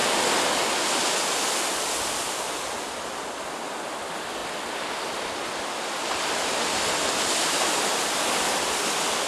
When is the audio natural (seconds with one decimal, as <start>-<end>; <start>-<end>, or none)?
0.0-9.3